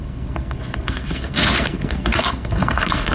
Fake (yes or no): yes